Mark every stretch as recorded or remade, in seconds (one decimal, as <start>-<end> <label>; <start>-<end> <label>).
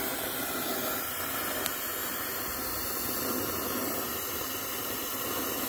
0.0-2.0 recorded; 2.0-2.7 remade; 2.7-5.7 recorded